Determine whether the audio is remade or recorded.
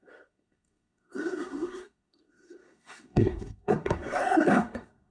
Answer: remade